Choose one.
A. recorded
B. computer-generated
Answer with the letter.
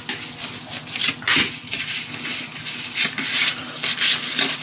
A